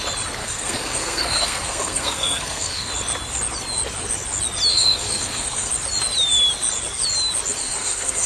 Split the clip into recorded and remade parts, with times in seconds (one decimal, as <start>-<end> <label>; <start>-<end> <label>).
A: 0.0-0.4 recorded; 0.4-2.9 remade; 2.9-4.7 recorded; 4.7-5.7 remade; 5.7-7.6 recorded; 7.6-8.3 remade

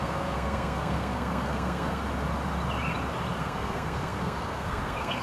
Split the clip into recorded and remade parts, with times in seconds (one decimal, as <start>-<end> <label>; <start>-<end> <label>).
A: 0.0-2.0 remade; 2.0-3.4 recorded; 3.4-5.2 remade

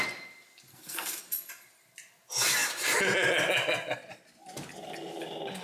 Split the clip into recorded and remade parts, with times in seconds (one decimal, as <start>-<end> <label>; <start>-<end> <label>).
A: 0.0-0.7 recorded; 0.7-1.2 remade; 1.2-5.6 recorded

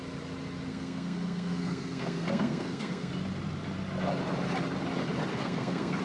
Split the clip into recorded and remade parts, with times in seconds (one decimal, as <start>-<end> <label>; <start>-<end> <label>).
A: 0.0-0.7 recorded; 0.7-3.1 remade; 3.1-5.3 recorded; 5.3-6.0 remade

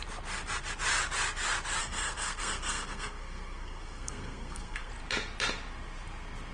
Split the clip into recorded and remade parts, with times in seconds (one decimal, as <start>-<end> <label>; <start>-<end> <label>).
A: 0.0-1.8 recorded; 1.8-4.9 remade; 4.9-6.5 recorded

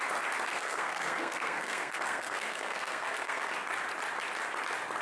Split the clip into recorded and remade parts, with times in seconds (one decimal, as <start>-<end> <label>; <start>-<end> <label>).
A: 0.0-0.5 recorded; 0.5-3.5 remade; 3.5-5.0 recorded